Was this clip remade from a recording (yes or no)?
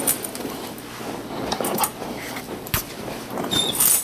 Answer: no